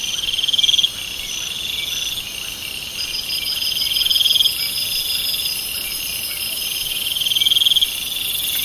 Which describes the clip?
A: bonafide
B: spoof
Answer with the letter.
A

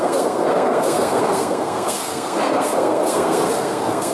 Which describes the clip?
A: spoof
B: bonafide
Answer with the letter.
A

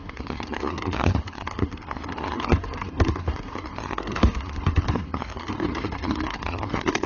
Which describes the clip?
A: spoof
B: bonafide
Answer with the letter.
A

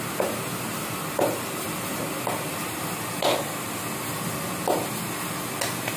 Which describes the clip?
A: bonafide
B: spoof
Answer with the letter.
A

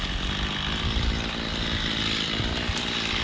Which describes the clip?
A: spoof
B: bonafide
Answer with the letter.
B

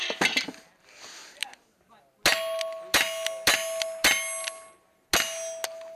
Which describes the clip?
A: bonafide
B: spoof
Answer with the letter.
A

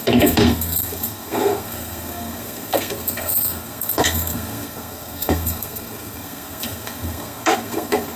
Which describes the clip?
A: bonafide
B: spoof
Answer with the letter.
B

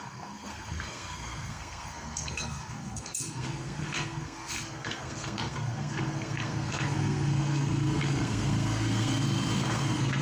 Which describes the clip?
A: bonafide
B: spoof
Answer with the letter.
B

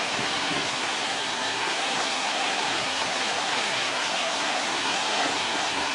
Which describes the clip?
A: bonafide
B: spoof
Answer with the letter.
B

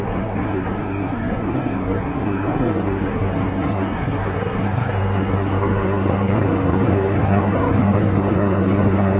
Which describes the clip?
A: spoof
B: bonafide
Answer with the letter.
A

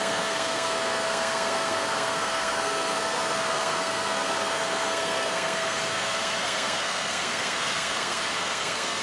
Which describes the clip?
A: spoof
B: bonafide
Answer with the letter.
A